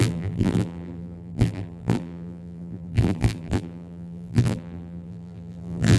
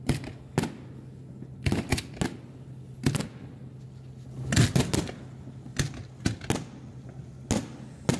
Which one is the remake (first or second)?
first